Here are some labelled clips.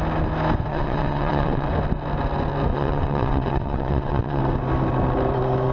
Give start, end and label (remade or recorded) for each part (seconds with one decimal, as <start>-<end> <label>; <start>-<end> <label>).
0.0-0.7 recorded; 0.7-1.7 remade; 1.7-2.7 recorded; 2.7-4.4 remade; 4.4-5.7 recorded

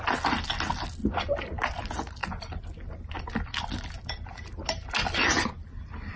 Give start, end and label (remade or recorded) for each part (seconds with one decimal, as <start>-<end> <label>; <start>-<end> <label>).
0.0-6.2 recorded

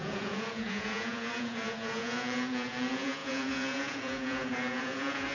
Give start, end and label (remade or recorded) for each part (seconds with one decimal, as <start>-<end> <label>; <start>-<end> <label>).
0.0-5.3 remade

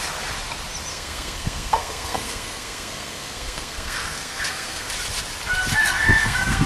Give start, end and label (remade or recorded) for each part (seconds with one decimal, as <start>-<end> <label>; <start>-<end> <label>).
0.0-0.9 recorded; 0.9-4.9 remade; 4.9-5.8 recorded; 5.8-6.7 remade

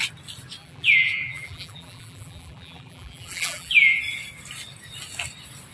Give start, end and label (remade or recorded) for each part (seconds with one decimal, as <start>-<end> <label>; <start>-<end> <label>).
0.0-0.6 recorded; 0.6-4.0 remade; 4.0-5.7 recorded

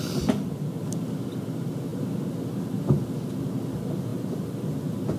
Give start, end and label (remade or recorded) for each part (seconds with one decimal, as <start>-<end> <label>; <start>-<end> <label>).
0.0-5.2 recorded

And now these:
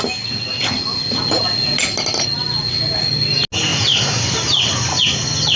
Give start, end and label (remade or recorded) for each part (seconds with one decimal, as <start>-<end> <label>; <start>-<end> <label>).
0.0-5.6 recorded

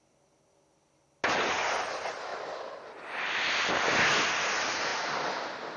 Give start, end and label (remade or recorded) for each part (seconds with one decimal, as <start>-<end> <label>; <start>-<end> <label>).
0.0-5.8 recorded